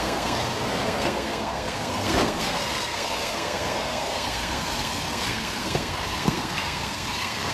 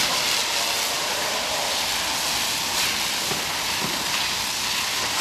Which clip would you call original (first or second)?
second